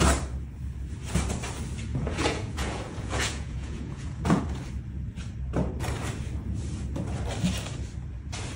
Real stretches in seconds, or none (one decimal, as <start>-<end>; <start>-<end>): 0.0-1.9; 4.4-8.6